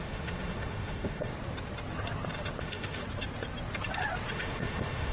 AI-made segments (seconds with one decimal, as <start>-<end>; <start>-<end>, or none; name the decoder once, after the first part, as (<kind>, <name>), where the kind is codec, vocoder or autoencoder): 0.0-1.3 (autoencoder, DAC-VAE); 2.6-3.0; 4.3-5.1